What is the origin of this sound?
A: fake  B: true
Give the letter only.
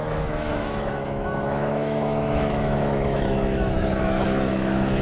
A